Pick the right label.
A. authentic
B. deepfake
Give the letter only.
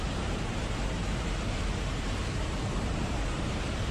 B